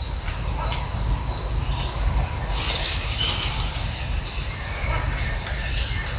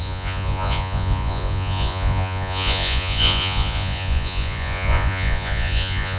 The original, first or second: first